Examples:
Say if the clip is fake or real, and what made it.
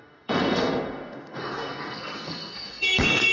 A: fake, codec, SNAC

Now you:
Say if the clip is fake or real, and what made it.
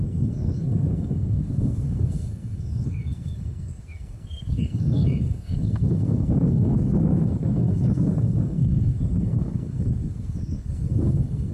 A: fake, codec, SNAC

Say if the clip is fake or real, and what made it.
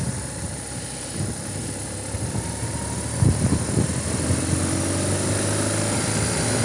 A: real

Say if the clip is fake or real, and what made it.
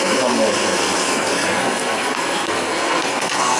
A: fake, codec, SNAC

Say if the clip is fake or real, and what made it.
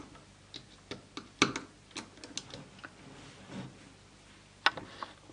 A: real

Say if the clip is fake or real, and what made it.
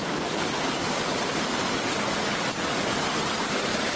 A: real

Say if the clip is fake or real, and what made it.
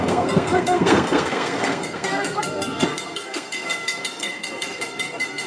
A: fake, codec, SNAC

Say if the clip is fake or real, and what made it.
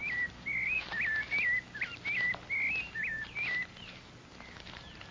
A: real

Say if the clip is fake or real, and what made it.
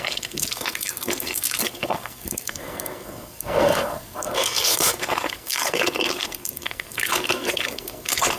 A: fake, codec, SNAC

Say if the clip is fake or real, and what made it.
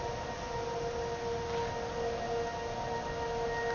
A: real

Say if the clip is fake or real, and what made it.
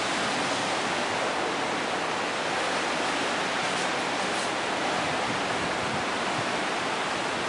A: real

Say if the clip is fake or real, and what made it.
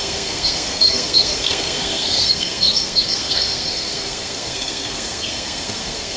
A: fake, codec, SNAC